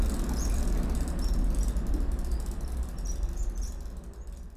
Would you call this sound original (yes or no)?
yes